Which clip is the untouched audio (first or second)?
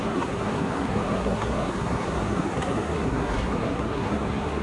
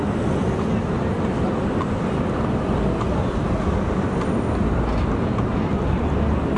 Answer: second